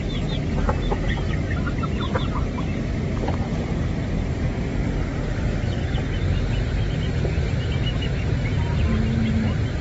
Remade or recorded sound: recorded